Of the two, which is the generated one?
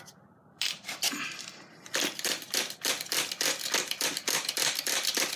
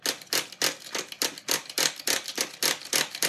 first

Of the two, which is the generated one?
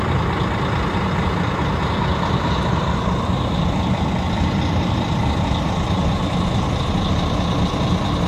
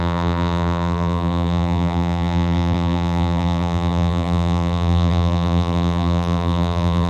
second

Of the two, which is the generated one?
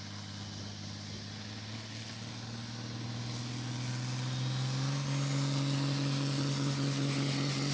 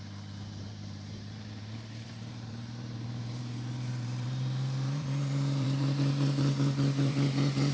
second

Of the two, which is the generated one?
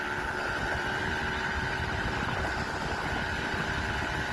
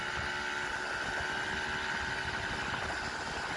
first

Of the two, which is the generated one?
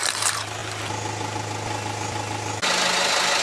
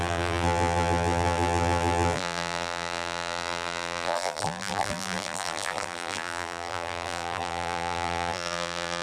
second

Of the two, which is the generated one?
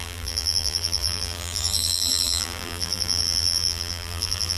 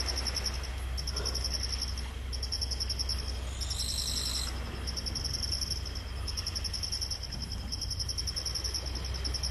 first